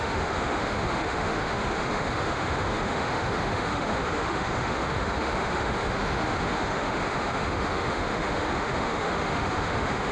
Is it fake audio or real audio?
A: fake